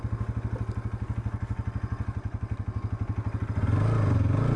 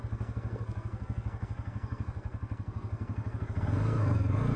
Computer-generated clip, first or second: second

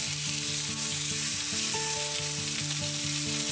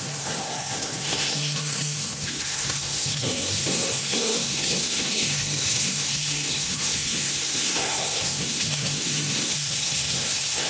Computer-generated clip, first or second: second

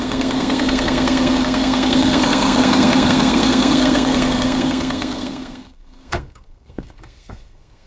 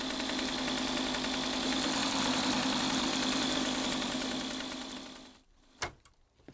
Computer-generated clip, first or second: first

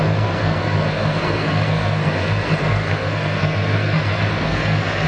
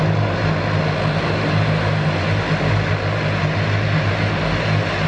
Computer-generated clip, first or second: first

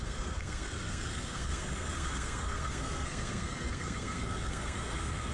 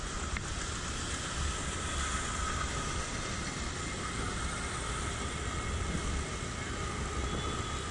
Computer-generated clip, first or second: first